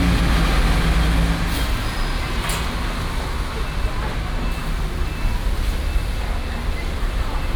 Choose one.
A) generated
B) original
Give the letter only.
B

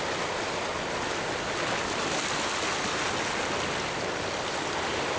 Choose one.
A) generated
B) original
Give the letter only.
B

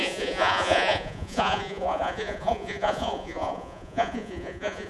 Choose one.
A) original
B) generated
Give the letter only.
B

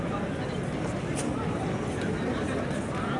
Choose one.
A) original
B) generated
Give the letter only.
A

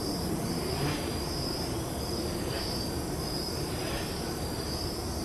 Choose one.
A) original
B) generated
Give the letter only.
B